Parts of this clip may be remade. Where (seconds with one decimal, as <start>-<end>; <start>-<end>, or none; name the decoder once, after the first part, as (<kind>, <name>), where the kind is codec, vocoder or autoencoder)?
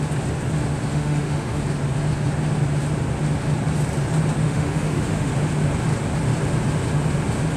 0.9-1.6 (autoencoder, DAC-VAE); 4.4-5.3